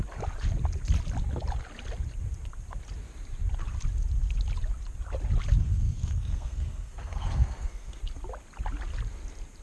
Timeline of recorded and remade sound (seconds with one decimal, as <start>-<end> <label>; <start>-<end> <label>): 0.0-5.6 recorded; 5.6-8.0 remade; 8.0-9.6 recorded

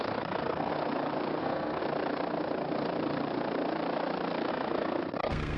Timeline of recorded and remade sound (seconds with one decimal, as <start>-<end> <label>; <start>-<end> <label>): 0.0-0.7 remade; 0.7-1.4 recorded; 1.4-1.8 remade; 1.8-4.5 recorded; 4.5-5.6 remade

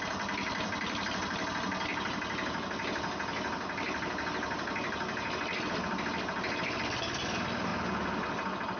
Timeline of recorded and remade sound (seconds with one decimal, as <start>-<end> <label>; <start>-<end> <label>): 0.0-8.8 recorded

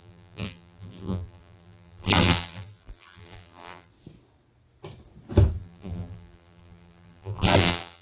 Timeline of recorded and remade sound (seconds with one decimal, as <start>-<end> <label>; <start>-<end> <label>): 0.0-3.9 remade; 3.9-5.6 recorded; 5.6-8.0 remade

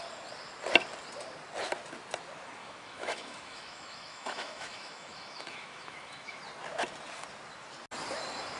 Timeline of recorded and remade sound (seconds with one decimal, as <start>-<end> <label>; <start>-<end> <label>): 0.0-2.6 recorded; 2.6-6.4 remade; 6.4-8.6 recorded

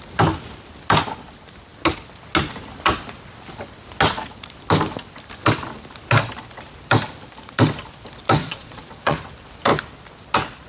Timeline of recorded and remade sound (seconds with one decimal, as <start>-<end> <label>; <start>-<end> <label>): 0.0-8.4 recorded; 8.4-9.2 remade; 9.2-10.7 recorded

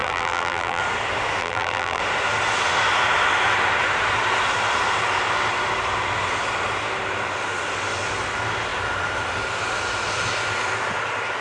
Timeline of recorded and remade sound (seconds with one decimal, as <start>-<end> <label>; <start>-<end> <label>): 0.0-0.8 remade; 0.8-1.4 recorded; 1.4-2.0 remade; 2.0-11.4 recorded